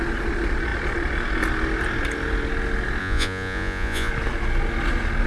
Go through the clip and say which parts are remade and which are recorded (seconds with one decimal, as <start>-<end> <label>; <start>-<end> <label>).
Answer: 0.0-3.0 recorded; 3.0-4.1 remade; 4.1-5.3 recorded